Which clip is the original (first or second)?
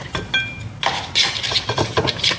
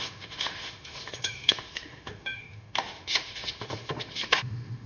first